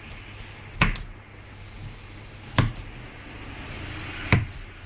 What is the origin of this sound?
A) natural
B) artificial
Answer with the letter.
A